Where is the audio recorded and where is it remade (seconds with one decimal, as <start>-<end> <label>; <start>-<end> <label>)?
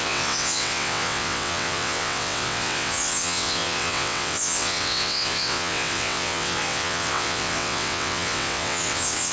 0.0-9.3 remade